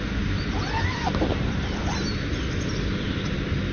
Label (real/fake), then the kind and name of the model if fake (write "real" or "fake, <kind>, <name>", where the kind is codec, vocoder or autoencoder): real